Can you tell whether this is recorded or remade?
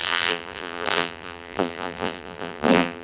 remade